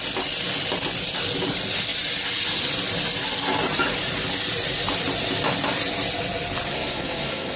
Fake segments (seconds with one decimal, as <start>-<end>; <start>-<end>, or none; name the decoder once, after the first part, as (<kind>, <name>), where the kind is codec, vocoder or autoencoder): 6.7-7.6 (codec, SNAC)